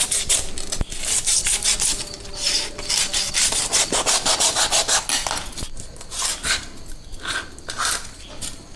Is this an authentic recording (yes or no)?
yes